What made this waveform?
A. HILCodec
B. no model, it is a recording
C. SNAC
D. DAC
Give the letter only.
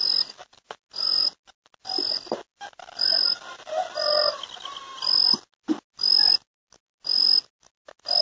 B